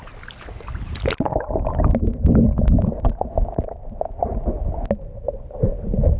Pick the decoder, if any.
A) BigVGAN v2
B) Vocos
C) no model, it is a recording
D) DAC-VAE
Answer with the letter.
C